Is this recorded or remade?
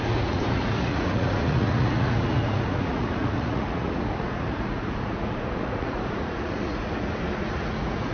remade